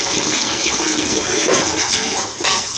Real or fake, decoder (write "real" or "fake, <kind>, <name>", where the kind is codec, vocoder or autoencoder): fake, codec, SNAC